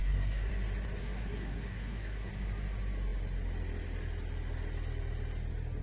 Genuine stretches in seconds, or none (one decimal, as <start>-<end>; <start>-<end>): 0.5-1.0; 2.3-5.8